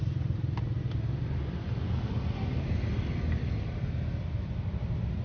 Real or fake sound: real